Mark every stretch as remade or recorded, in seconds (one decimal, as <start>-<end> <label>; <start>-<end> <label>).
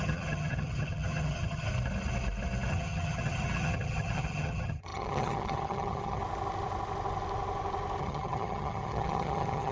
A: 0.0-1.7 remade; 1.7-2.7 recorded; 2.7-6.2 remade; 6.2-8.0 recorded; 8.0-9.7 remade